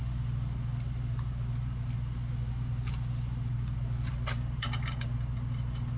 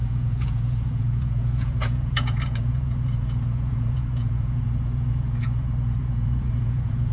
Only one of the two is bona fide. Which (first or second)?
first